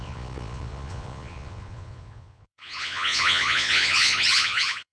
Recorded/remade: remade